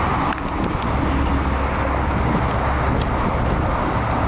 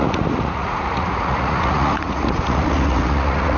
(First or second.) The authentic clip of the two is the first